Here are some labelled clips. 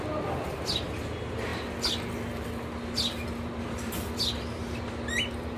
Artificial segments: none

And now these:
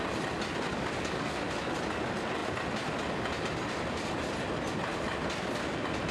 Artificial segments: 0.7-1.4